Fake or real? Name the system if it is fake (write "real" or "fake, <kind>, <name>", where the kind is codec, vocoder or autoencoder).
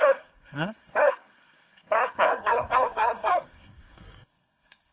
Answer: fake, codec, SNAC